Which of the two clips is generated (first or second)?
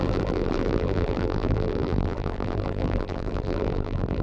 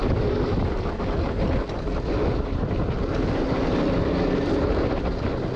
first